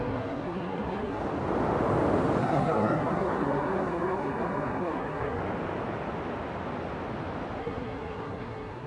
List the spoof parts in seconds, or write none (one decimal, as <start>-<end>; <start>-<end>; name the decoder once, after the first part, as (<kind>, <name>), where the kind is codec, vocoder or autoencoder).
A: 0.0-1.2 (codec, SNAC); 2.4-5.4; 7.6-8.9